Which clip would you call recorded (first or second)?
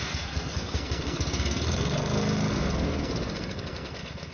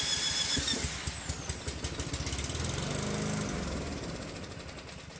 second